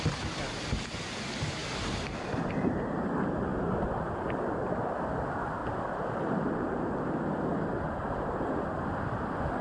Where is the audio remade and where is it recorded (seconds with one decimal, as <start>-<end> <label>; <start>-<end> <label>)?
0.0-1.6 recorded; 1.6-3.0 remade; 3.0-3.5 recorded; 3.5-5.0 remade; 5.0-5.6 recorded; 5.6-7.0 remade; 7.0-9.6 recorded